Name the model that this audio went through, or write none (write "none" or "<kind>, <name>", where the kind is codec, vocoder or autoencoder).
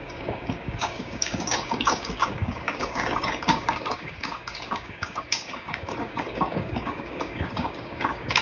codec, DAC